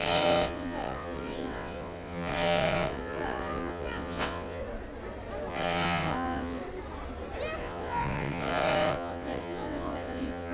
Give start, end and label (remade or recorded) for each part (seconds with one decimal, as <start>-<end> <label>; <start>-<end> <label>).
0.0-4.6 remade; 4.6-5.5 recorded; 5.5-6.6 remade; 6.6-7.6 recorded; 7.6-10.5 remade